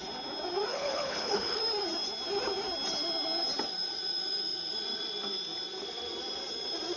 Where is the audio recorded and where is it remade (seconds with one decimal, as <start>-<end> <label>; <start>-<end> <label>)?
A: 0.0-0.7 recorded; 0.7-1.6 remade; 1.6-7.0 recorded

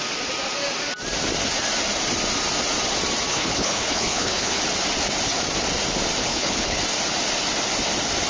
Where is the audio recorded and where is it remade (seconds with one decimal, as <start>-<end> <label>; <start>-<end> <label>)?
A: 0.0-3.3 recorded; 3.3-4.6 remade; 4.6-6.2 recorded; 6.2-6.8 remade; 6.8-8.3 recorded

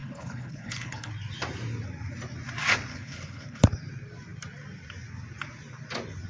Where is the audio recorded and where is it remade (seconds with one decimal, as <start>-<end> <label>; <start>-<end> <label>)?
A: 0.0-1.1 remade; 1.1-2.9 recorded; 2.9-3.6 remade; 3.6-6.3 recorded

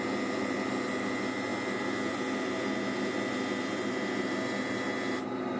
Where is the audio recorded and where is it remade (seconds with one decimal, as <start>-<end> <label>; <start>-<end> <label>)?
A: 0.0-5.6 recorded

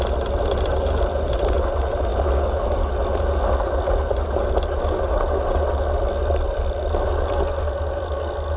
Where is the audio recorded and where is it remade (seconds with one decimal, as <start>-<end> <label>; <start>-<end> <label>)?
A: 0.0-8.6 recorded

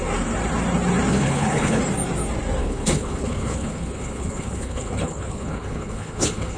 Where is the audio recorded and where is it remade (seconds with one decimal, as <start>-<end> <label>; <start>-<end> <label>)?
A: 0.0-1.1 recorded; 1.1-1.8 remade; 1.8-2.6 recorded; 2.6-6.6 remade

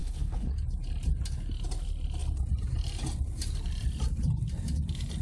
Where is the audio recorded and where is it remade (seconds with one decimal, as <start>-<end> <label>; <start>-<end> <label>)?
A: 0.0-0.5 remade; 0.5-5.2 recorded

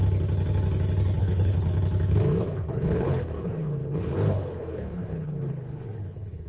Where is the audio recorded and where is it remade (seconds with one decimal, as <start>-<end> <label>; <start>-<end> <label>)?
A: 0.0-1.2 recorded; 1.2-1.7 remade; 1.7-2.4 recorded; 2.4-6.5 remade